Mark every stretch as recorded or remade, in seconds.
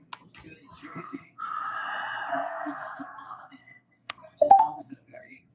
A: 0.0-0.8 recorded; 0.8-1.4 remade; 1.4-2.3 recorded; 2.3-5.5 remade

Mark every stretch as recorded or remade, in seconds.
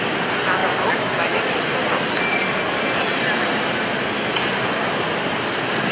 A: 0.0-5.9 recorded